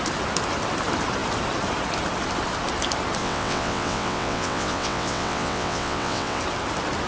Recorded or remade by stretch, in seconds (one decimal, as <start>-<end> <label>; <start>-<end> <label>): 0.0-3.2 recorded; 3.2-6.4 remade; 6.4-7.1 recorded